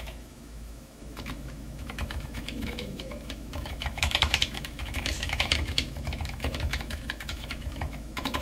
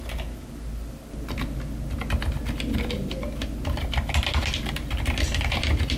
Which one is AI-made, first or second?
first